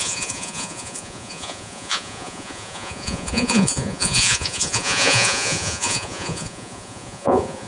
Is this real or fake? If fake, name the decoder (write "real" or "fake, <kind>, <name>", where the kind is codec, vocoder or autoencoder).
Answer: fake, vocoder, Vocos